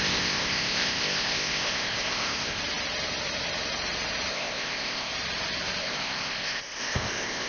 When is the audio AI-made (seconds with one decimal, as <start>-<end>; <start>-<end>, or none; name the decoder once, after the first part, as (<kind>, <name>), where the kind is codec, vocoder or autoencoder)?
0.0-2.6 (codec, ZipCodec); 4.3-5.1; 5.8-7.5